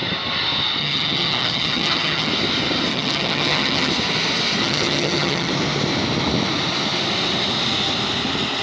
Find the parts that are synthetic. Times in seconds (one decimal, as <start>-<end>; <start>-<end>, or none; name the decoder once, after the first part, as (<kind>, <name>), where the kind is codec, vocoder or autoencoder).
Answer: 0.8-2.3 (vocoder, HiFi-GAN); 2.9-3.9; 4.6-5.5